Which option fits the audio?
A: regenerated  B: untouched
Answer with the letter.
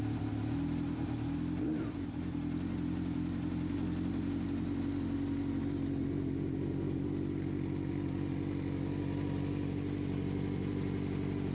B